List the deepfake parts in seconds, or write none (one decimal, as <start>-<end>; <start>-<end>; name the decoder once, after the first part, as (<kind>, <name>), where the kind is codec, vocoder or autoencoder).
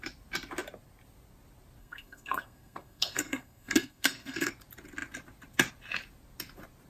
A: 1.8-4.5 (codec, SNAC)